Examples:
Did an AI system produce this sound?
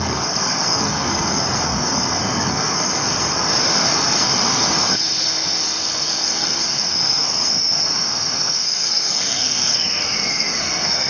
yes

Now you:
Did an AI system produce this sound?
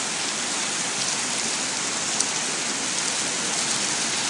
no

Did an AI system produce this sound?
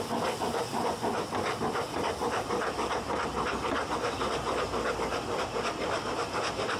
yes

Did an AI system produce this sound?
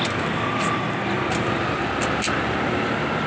no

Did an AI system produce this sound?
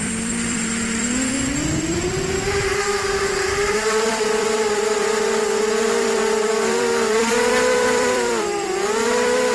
yes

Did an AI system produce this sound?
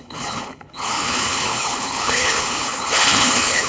yes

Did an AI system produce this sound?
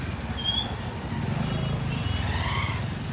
no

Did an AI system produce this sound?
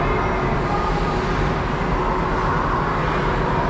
no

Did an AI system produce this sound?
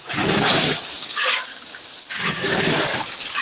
yes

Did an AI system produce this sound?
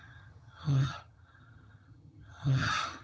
yes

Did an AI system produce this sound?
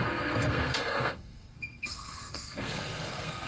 yes